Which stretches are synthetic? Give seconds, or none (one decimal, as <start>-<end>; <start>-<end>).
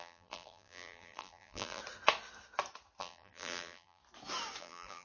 0.0-1.8; 3.0-4.0; 4.6-5.0